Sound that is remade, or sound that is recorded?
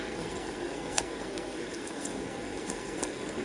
remade